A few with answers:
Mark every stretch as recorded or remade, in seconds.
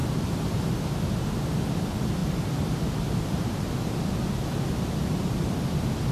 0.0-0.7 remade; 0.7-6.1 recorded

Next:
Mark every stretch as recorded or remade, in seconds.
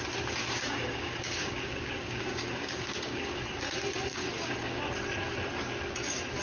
0.0-0.4 recorded; 0.4-3.2 remade; 3.2-4.1 recorded; 4.1-4.8 remade; 4.8-6.4 recorded